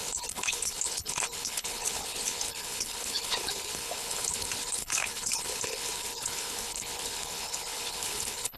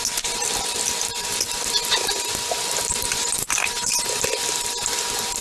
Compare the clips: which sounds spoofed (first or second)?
first